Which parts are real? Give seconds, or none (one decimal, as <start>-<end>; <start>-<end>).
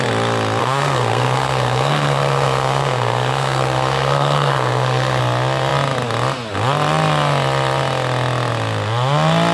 0.0-0.6; 5.2-9.5